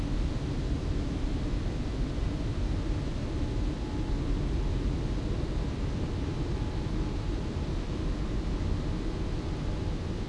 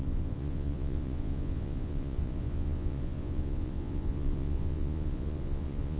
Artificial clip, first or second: second